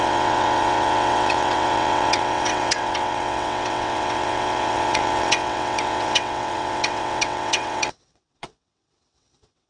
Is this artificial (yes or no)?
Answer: yes